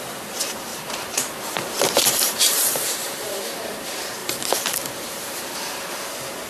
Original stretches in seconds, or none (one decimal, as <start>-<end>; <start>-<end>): 0.0-0.7; 3.4-4.2; 6.0-6.5

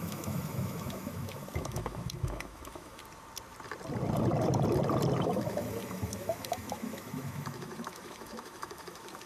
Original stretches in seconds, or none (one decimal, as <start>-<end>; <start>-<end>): 3.0-5.2

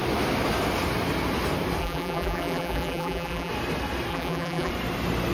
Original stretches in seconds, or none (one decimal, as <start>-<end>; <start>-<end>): 0.0-1.8; 3.5-4.1; 4.7-5.3

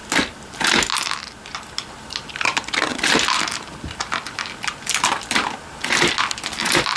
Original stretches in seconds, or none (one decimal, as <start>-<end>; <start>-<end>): 0.0-7.0

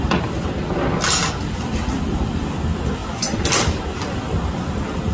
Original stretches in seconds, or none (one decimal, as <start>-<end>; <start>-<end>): 0.0-5.1